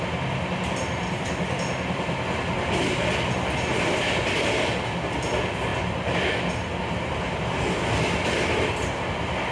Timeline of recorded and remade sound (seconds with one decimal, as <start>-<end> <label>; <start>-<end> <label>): 0.0-9.5 recorded